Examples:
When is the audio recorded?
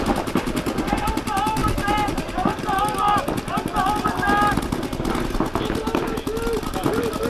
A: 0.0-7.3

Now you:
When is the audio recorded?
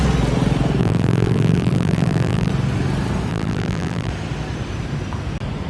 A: 0.0-0.8; 2.5-3.3; 4.1-5.7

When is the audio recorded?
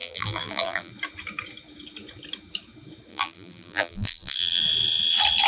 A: 0.9-3.1; 4.6-5.5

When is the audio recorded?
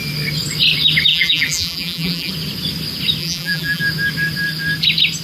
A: 0.0-1.1; 2.3-3.2; 3.8-5.2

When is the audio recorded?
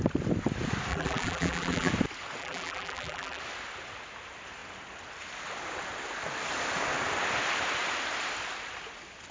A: 0.0-0.9; 1.9-2.4; 3.4-9.3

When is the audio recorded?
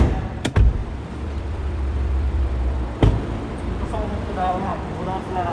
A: 4.7-5.5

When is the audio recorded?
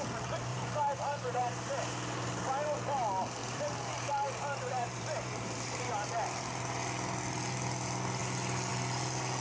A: 0.0-0.5; 1.7-3.4; 6.1-9.4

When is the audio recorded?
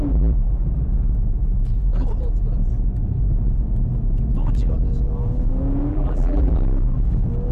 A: 0.0-5.9; 6.5-7.5